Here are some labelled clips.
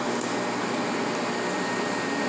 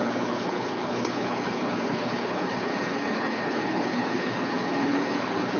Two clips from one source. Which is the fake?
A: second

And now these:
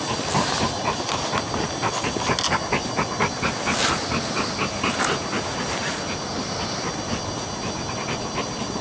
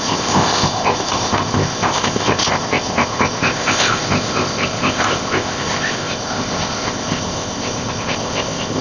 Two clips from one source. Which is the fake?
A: second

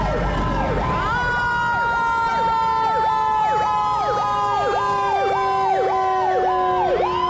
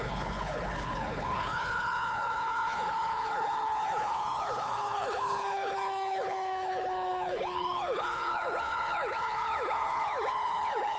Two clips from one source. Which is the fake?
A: second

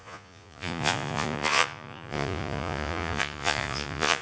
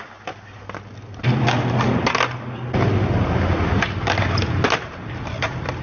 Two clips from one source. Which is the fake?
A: first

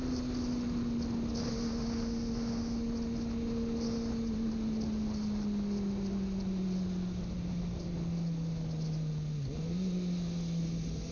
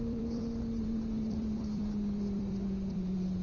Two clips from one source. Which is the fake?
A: second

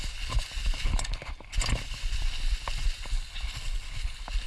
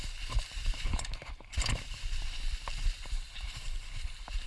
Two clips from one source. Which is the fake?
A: second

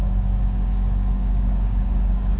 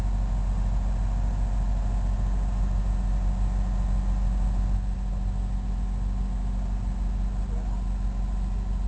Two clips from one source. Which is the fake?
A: first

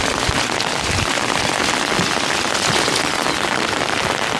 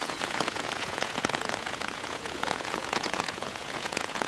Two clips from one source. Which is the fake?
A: second